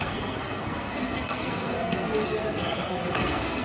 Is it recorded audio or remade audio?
remade